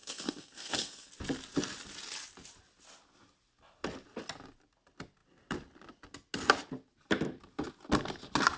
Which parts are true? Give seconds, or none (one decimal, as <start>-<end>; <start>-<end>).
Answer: 1.1-8.6